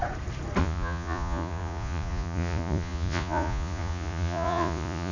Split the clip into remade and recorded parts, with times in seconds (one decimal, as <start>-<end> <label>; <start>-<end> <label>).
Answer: 0.0-0.6 recorded; 0.6-5.1 remade